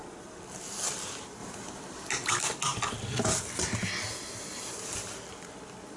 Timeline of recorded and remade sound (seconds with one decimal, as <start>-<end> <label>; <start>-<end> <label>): 0.0-6.0 recorded